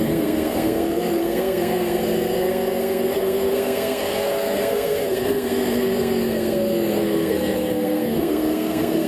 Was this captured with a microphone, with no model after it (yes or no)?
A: no